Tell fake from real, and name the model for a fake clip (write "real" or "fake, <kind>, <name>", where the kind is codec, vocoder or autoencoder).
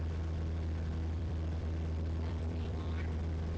fake, vocoder, BigVGAN v2